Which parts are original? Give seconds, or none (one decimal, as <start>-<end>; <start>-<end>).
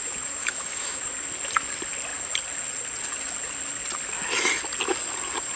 0.0-0.4; 1.0-5.6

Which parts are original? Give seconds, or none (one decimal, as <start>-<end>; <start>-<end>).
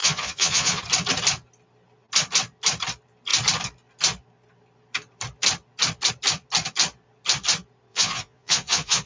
0.8-7.9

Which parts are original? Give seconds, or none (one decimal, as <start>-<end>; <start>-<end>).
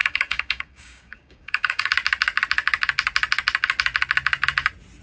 1.9-5.0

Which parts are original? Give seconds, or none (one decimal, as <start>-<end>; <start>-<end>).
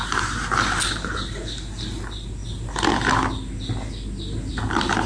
0.0-5.1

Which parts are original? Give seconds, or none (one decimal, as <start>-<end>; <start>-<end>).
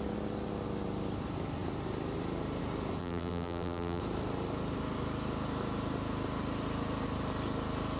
0.0-3.0; 4.0-8.0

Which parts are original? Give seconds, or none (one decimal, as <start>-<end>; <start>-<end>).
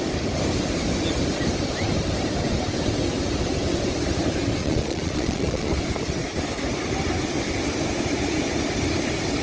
0.0-4.6; 5.7-9.4